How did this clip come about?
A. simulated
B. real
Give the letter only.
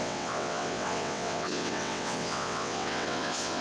A